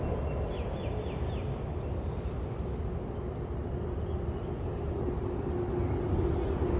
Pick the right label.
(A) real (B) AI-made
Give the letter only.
A